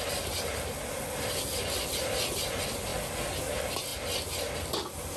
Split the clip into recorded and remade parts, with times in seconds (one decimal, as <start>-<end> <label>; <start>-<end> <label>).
0.0-5.2 recorded